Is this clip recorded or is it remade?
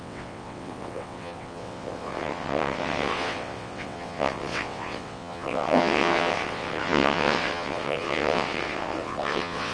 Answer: remade